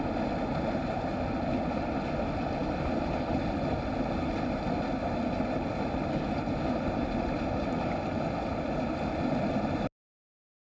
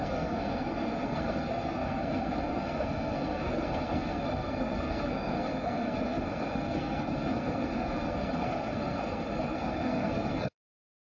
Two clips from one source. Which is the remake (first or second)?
second